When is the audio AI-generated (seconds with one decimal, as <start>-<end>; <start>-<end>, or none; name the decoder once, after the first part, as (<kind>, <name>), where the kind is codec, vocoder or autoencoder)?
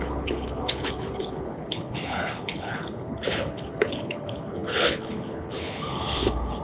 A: 0.0-6.6 (codec, HILCodec)